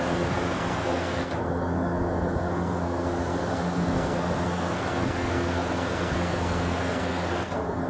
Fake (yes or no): yes